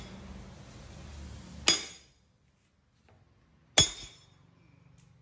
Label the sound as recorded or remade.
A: recorded